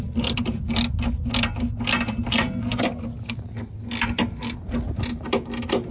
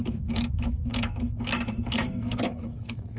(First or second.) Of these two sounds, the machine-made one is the second